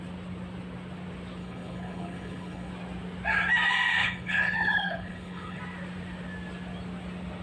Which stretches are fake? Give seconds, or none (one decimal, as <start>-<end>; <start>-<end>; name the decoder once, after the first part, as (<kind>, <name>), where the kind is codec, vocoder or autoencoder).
1.4-2.7 (codec, HILCodec); 4.0-5.6